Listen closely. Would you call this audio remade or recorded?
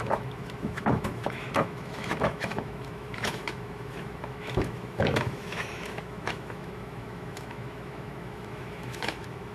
remade